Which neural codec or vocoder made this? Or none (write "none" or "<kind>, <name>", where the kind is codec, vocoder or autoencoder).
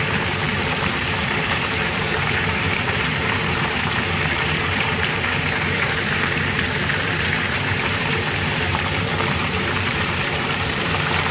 vocoder, BigVGAN v2